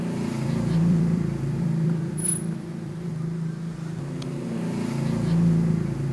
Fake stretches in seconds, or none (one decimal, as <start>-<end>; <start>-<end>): 0.0-3.1